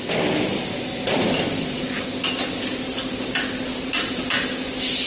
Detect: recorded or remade recorded